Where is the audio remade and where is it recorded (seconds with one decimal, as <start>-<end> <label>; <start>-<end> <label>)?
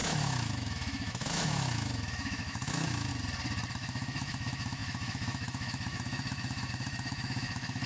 0.0-3.1 remade; 3.1-3.7 recorded; 3.7-7.9 remade